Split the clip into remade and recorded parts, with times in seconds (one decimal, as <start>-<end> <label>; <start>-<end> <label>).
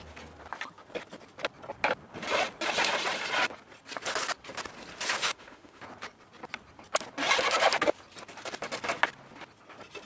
0.0-5.2 recorded; 5.2-5.8 remade; 5.8-10.1 recorded